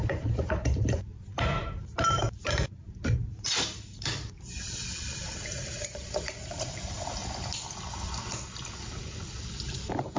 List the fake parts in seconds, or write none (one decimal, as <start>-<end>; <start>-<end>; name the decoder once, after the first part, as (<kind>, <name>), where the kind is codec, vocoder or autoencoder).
0.0-7.2 (vocoder, BigVGAN v2); 9.7-10.2